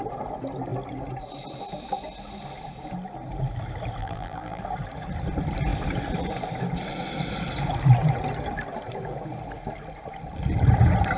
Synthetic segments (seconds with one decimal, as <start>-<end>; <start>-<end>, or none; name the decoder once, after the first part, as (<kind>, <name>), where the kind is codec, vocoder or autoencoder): 4.0-4.6 (vocoder, BigVGAN v2)